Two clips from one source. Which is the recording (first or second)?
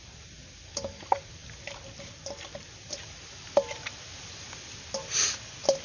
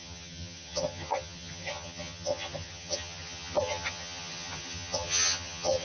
first